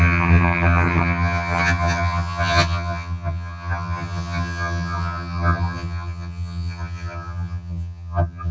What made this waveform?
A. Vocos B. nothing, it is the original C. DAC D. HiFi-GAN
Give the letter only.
D